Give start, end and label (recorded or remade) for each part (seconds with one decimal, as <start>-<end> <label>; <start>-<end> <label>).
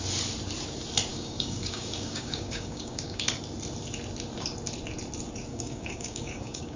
0.0-1.1 recorded; 1.1-3.3 remade; 3.3-5.5 recorded; 5.5-6.8 remade